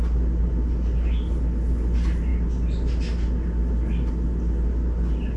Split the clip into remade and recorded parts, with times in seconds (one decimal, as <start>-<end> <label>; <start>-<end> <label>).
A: 0.0-5.4 recorded